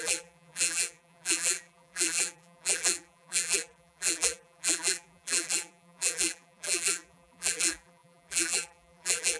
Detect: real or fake fake